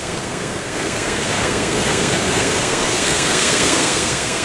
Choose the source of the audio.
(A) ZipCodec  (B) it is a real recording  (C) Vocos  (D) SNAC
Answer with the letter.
D